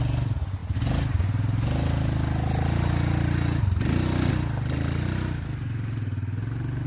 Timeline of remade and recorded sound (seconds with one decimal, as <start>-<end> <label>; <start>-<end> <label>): 0.0-6.9 recorded